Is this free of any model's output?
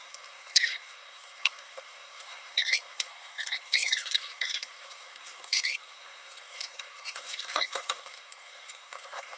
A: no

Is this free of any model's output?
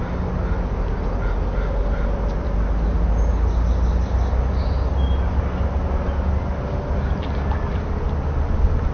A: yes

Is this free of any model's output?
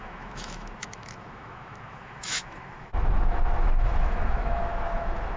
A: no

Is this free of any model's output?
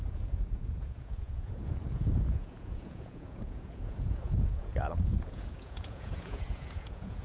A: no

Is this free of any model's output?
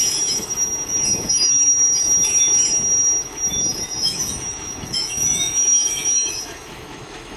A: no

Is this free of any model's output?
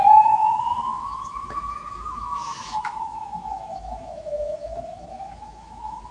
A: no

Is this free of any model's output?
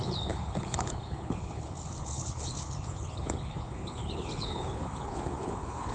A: no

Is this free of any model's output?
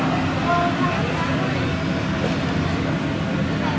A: yes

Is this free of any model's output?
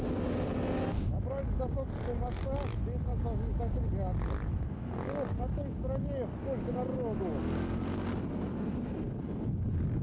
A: yes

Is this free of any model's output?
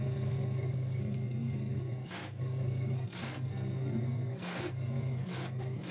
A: no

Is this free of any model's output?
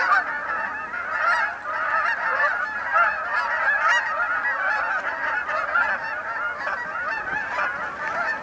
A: yes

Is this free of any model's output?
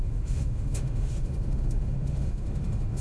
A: no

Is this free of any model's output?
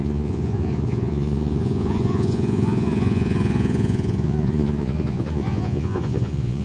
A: no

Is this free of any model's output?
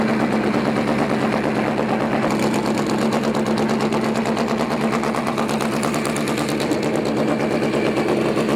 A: yes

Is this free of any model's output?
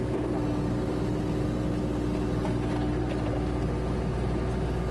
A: yes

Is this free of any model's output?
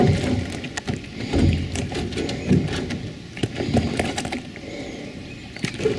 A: yes